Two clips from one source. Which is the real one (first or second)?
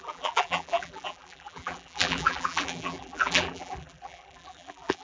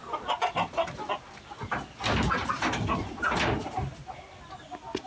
second